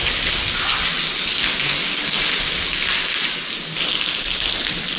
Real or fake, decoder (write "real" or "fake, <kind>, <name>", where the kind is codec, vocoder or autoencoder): real